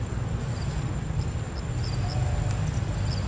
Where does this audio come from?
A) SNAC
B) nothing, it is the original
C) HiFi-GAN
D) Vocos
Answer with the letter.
B